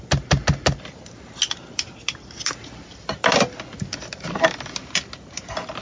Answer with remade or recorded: recorded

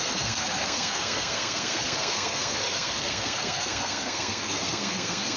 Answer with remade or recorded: remade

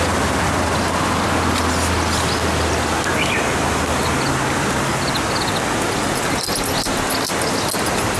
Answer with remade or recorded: recorded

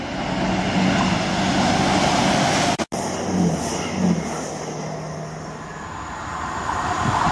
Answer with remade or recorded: recorded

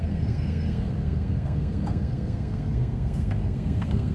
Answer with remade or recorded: remade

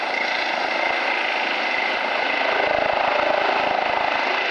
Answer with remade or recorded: recorded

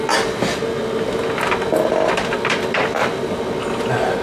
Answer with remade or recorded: recorded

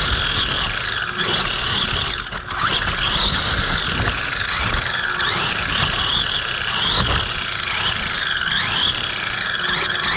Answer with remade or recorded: recorded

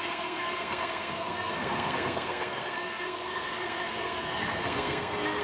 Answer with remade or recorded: remade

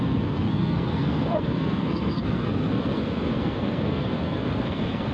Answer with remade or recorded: remade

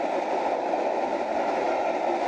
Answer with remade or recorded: recorded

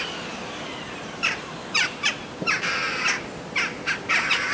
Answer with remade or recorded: recorded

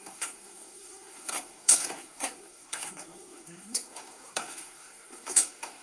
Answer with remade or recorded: remade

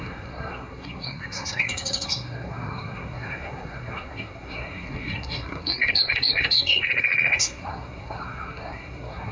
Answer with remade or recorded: remade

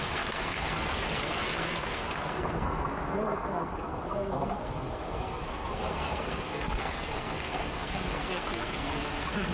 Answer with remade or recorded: remade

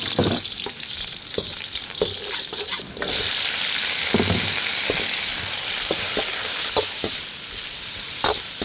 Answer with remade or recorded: recorded